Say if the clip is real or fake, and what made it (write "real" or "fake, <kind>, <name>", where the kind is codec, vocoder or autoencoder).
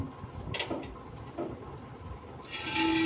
real